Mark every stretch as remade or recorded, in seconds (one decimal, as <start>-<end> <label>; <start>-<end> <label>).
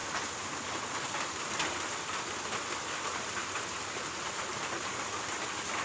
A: 0.0-5.8 recorded